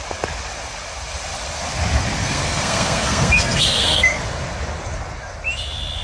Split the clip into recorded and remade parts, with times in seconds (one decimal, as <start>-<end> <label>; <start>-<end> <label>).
0.0-2.2 recorded; 2.2-4.2 remade; 4.2-6.0 recorded